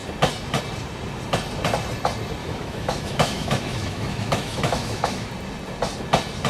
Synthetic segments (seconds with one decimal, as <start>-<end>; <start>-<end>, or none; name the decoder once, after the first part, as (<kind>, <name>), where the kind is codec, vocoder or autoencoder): 2.4-5.3 (autoencoder, DAC-VAE)